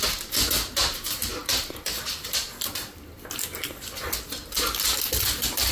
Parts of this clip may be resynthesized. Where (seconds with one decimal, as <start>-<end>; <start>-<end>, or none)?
none